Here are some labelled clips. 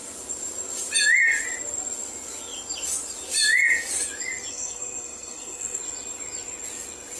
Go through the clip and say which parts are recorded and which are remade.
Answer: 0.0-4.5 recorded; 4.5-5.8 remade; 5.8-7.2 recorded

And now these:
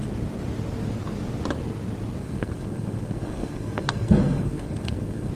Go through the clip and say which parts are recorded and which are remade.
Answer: 0.0-2.2 recorded; 2.2-5.3 remade

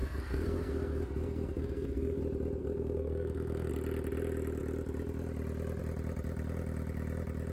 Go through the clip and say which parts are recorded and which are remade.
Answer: 0.0-2.2 remade; 2.2-2.6 recorded; 2.6-3.7 remade; 3.7-7.5 recorded

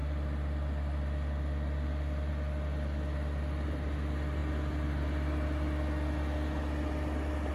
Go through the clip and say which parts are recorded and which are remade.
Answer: 0.0-7.5 recorded

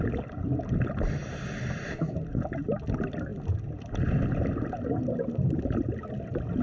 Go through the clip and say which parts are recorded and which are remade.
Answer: 0.0-6.6 recorded

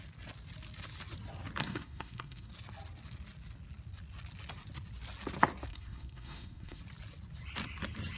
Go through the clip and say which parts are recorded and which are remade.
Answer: 0.0-1.6 recorded; 1.6-2.5 remade; 2.5-5.7 recorded; 5.7-6.8 remade; 6.8-8.2 recorded

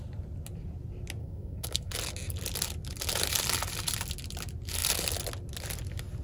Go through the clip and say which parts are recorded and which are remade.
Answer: 0.0-1.2 recorded; 1.2-1.9 remade; 1.9-6.2 recorded

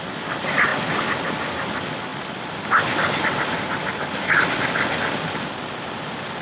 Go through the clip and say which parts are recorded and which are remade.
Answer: 0.0-6.4 recorded